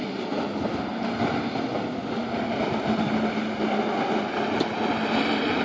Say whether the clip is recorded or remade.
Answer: recorded